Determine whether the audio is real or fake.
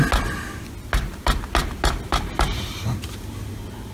real